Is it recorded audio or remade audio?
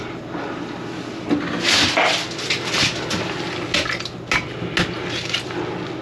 recorded